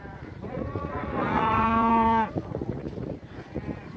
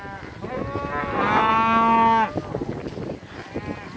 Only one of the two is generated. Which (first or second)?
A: first